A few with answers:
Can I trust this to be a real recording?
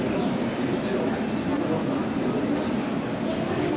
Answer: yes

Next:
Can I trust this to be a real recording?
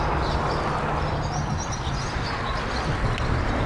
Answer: yes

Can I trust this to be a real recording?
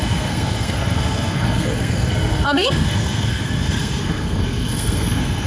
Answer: no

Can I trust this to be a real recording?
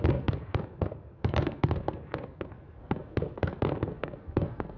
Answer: no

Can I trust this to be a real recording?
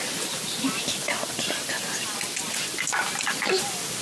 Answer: yes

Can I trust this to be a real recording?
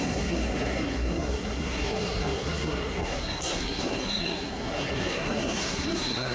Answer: no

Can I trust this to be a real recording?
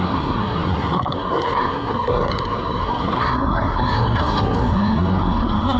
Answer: no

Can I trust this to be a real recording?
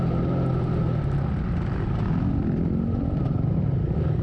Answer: yes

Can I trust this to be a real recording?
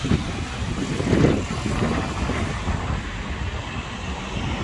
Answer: yes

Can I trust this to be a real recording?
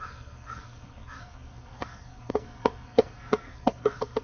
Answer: no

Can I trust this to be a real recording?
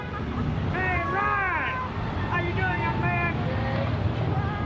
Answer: yes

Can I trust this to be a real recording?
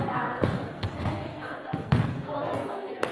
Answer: no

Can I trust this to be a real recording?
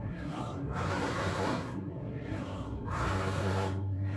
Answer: no